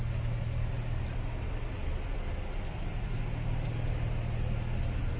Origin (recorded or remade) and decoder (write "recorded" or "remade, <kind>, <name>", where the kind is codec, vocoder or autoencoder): recorded